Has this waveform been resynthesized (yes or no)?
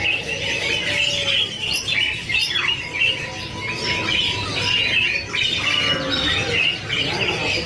no